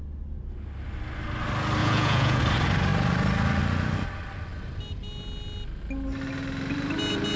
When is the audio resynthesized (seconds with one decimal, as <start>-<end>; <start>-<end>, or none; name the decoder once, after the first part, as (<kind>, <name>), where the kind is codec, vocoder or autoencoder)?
1.8-2.4 (vocoder, Vocos)